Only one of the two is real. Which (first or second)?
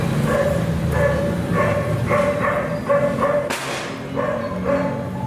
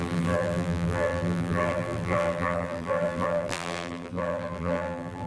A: first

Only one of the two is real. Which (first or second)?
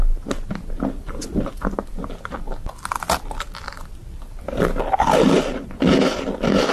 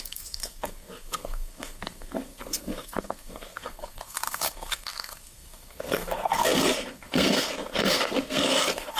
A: first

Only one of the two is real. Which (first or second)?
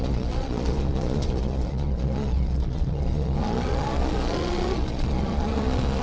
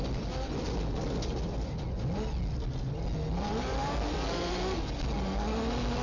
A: second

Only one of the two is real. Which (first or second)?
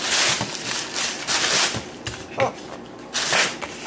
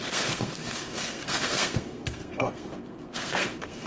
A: first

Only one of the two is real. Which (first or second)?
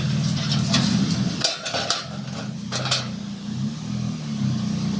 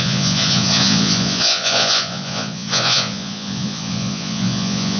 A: first